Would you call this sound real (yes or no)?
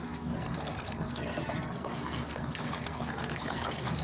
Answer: no